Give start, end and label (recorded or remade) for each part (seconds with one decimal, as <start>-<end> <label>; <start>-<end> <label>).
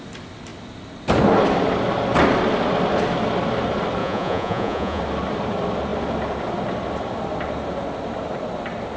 0.0-4.0 recorded; 4.0-5.0 remade; 5.0-9.0 recorded